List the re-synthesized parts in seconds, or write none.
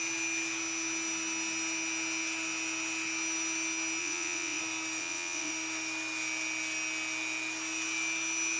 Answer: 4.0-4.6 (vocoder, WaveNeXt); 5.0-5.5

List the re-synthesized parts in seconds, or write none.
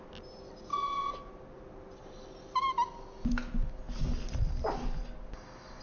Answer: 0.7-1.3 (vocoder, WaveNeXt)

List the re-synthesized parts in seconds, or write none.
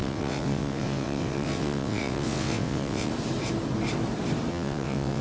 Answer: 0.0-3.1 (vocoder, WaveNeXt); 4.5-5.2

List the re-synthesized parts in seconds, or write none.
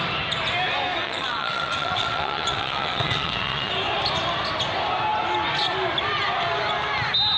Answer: 1.0-3.7 (vocoder, WaveNeXt)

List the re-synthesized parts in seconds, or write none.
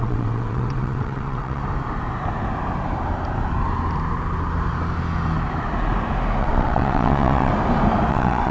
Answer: 0.0-1.6 (vocoder, WaveNeXt); 6.4-7.5; 8.1-8.5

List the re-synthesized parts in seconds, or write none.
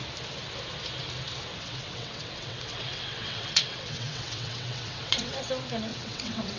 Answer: 1.5-5.5 (vocoder, WaveNeXt); 5.9-6.6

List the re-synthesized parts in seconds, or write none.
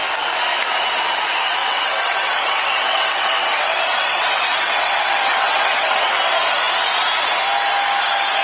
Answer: 1.6-6.3 (vocoder, WaveNeXt)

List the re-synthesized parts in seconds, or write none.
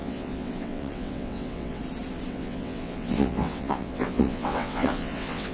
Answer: 0.0-1.8 (vocoder, WaveNeXt); 2.3-5.5